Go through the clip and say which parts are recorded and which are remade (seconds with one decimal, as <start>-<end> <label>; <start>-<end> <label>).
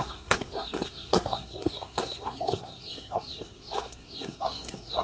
0.0-5.0 remade